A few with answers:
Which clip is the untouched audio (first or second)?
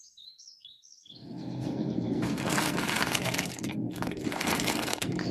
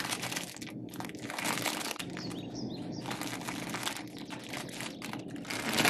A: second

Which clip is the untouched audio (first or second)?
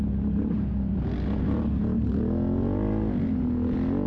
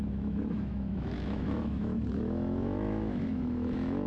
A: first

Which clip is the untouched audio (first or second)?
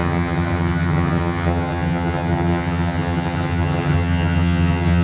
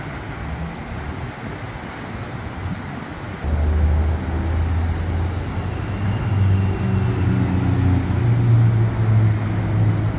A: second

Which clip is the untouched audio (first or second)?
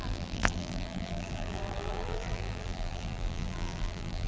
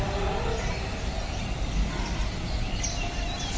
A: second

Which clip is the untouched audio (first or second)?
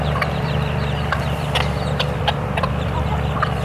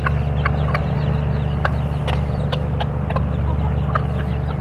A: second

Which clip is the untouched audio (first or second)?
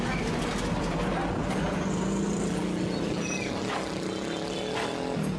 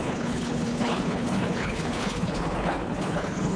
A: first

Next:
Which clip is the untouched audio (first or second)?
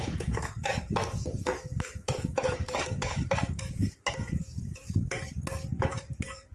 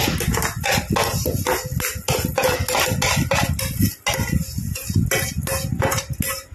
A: second